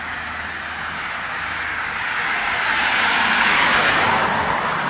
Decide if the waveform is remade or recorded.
recorded